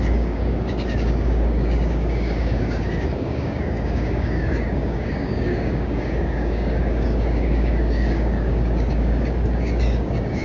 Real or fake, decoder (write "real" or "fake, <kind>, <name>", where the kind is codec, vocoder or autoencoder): fake, codec, DAC